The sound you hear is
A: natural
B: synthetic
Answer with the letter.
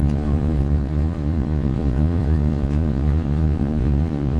B